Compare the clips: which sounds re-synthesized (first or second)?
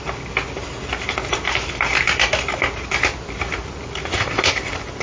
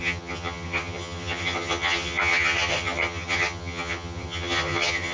second